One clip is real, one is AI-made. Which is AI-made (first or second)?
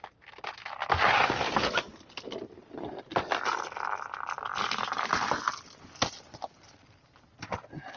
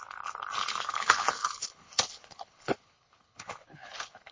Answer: second